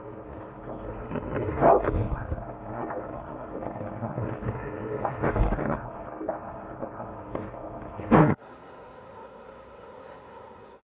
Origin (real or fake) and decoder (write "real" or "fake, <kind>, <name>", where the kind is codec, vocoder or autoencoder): fake, codec, SNAC